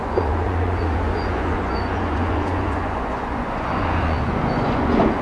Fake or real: fake